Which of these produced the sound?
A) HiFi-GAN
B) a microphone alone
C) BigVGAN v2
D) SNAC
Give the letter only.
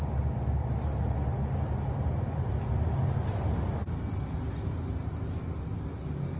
B